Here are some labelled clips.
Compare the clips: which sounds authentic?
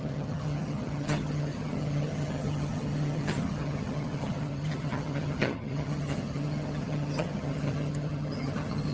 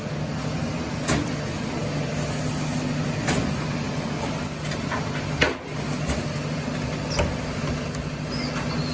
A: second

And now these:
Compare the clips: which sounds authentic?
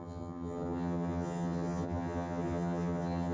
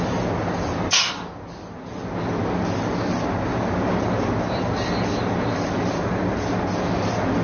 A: second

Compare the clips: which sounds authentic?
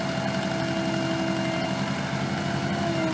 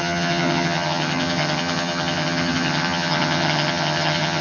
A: first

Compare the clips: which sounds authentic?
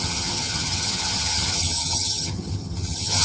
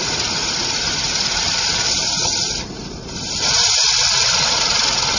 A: second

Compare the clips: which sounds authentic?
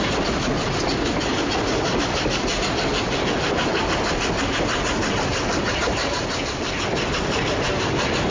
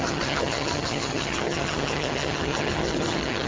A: first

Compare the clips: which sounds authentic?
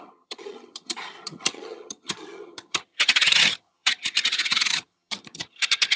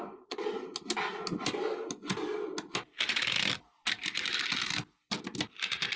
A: second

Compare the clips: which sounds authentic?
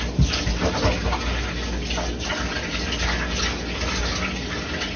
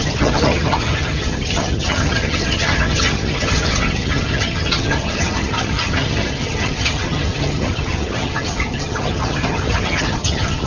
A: first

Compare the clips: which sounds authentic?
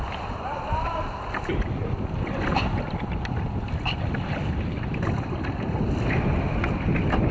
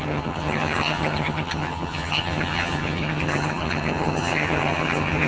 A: first